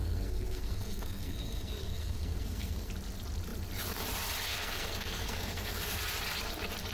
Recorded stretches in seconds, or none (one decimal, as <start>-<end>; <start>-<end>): 2.9-4.5; 6.0-6.9